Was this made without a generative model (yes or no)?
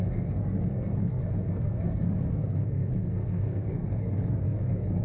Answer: no